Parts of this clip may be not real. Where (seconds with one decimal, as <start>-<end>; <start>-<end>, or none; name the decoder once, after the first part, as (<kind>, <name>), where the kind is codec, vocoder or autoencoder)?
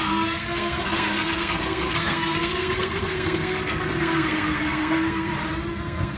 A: 0.0-5.3 (codec, SNAC); 5.8-6.2